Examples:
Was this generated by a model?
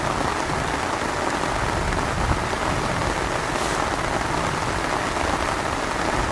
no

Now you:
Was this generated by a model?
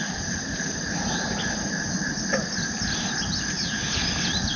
no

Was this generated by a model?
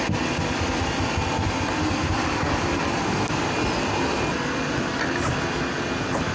no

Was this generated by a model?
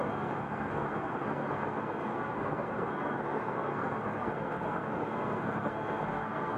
yes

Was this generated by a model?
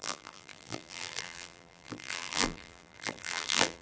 yes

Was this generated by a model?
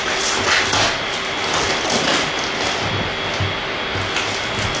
no